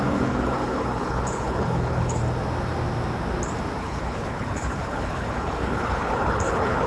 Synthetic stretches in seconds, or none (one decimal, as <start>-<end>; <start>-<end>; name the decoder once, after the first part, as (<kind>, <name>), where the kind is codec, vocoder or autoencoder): 0.0-2.2 (codec, HILCodec); 3.8-6.9